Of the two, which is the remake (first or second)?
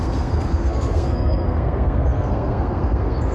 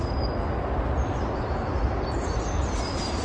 first